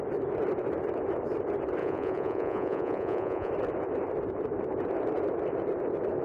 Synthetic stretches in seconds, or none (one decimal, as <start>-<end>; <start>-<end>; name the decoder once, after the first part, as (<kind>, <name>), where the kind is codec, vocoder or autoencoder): 1.8-3.5 (vocoder, Vocos)